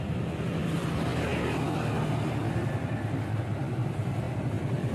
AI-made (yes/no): no